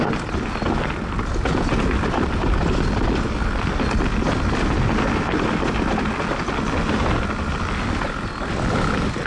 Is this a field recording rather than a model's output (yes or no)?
yes